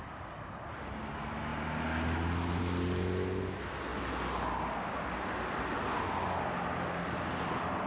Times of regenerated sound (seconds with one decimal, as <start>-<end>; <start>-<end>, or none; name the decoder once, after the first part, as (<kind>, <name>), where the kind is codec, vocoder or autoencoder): none